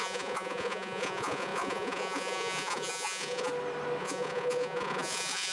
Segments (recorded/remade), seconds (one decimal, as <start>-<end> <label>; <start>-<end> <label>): 0.0-3.5 remade; 3.5-4.0 recorded; 4.0-5.5 remade